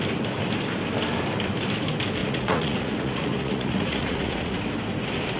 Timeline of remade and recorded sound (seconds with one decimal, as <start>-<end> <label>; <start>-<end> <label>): 0.0-2.2 recorded; 2.2-4.6 remade; 4.6-5.4 recorded

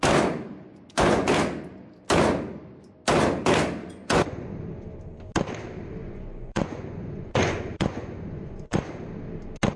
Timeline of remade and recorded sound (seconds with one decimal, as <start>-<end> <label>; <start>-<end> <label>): 0.0-0.7 recorded; 0.7-1.3 remade; 1.3-3.8 recorded; 3.8-4.5 remade; 4.5-6.0 recorded; 6.0-8.9 remade; 8.9-9.8 recorded

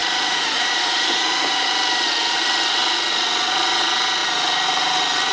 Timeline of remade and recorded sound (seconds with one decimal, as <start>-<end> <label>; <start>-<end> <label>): 0.0-1.7 remade; 1.7-5.3 recorded

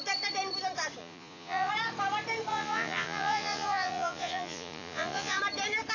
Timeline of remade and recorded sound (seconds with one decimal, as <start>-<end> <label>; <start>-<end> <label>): 0.0-1.0 recorded; 1.0-1.7 remade; 1.7-2.5 recorded; 2.5-5.4 remade; 5.4-5.9 recorded